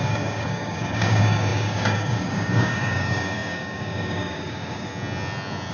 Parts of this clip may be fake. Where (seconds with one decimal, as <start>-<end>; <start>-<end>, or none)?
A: 0.0-4.9